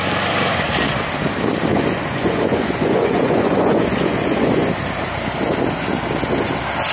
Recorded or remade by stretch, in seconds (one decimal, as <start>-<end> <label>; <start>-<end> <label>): 0.0-1.7 recorded; 1.7-4.7 remade; 4.7-6.9 recorded